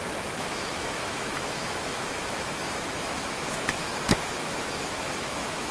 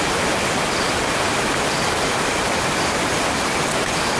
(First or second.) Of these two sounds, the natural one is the second